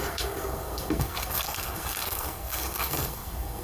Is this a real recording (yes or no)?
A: no